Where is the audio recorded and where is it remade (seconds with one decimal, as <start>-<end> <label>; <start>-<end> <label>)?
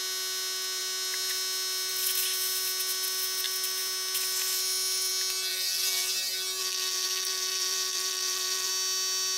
0.0-5.5 recorded; 5.5-6.1 remade; 6.1-6.6 recorded; 6.6-8.7 remade; 8.7-9.4 recorded